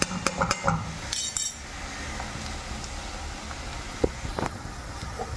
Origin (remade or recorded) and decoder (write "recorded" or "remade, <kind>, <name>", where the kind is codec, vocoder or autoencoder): recorded